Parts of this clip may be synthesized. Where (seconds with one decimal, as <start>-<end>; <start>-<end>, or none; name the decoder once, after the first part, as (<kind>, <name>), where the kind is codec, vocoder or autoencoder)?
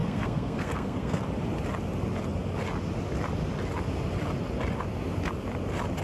0.0-1.2 (codec, SNAC)